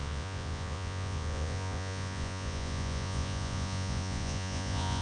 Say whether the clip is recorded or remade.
remade